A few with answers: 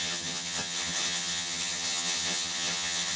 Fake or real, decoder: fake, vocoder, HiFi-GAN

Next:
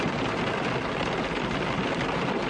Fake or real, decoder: real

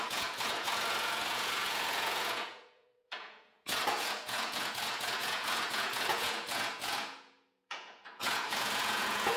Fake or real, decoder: fake, vocoder, Vocos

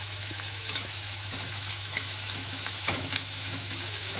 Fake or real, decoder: fake, autoencoder, DAC-VAE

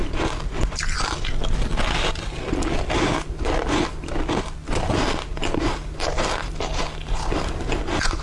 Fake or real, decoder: real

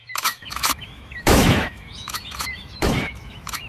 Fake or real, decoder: fake, autoencoder, DAC-VAE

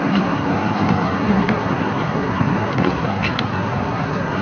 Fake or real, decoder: fake, codec, SNAC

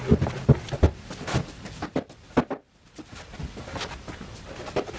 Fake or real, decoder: real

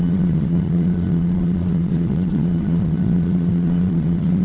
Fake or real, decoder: fake, vocoder, Vocos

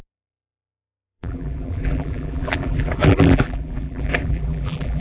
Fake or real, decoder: fake, vocoder, BigVGAN v2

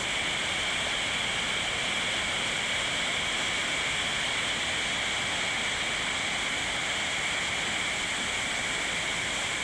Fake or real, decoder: real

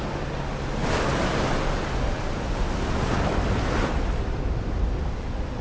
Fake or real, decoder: real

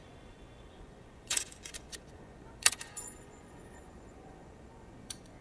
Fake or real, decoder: fake, vocoder, Vocos